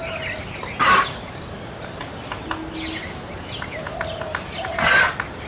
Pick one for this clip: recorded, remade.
recorded